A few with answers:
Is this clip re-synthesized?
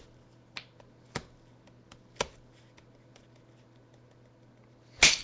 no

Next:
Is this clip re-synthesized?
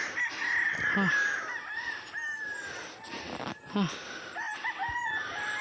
no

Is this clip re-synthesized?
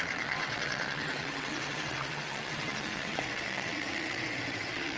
yes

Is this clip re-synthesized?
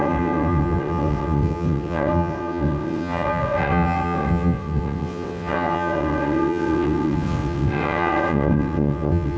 yes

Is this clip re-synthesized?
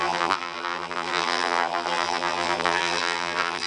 yes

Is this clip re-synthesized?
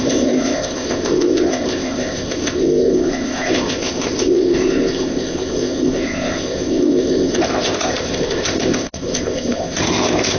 yes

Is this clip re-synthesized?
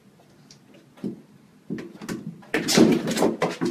no